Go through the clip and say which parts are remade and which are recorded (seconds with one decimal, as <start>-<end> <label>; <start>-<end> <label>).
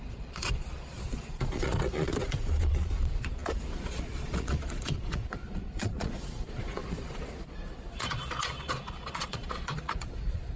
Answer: 0.0-10.6 remade